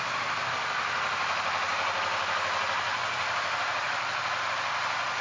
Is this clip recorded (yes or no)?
no